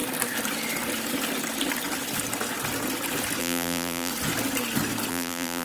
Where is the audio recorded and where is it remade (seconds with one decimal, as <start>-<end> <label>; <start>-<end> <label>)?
0.0-3.4 recorded; 3.4-4.1 remade; 4.1-5.1 recorded; 5.1-5.6 remade